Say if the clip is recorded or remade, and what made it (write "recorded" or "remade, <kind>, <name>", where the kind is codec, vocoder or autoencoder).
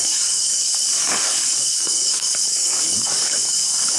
remade, codec, DAC